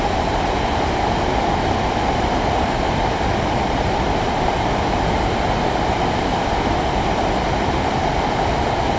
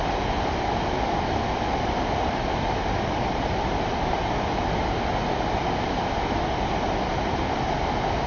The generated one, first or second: first